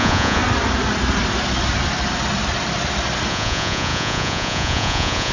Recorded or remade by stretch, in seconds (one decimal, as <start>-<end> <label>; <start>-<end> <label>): 0.0-0.4 remade; 0.4-3.3 recorded; 3.3-5.3 remade